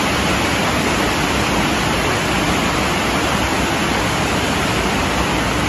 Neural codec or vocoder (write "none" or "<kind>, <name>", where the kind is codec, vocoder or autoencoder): none